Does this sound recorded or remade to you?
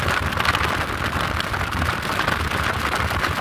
recorded